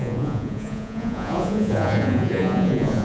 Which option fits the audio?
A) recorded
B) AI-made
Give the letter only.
B